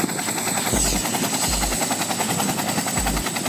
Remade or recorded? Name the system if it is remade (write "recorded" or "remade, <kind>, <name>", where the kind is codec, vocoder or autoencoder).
recorded